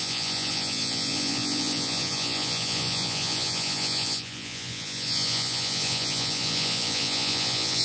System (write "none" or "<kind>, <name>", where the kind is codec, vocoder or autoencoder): vocoder, Vocos